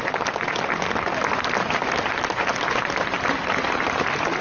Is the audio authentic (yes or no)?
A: yes